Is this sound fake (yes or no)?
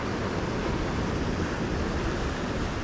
no